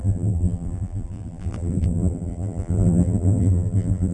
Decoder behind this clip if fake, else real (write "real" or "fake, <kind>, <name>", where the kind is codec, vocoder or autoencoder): fake, vocoder, BigVGAN v2